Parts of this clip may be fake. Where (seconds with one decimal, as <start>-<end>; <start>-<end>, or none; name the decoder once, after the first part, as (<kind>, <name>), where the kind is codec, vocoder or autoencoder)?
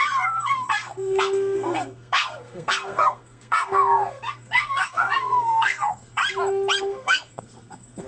0.0-6.2 (codec, SNAC); 6.8-8.1